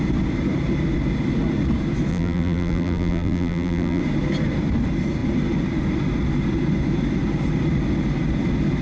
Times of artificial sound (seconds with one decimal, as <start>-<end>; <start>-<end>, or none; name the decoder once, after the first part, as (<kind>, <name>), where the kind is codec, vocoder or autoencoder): 2.1-4.0 (vocoder, BigVGAN v2)